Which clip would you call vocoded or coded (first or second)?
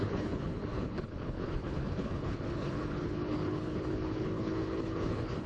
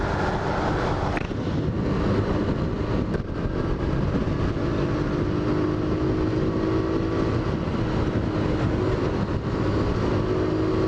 first